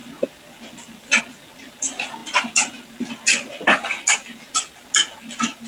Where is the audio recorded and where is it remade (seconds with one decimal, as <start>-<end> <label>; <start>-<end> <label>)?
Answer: 0.0-5.7 recorded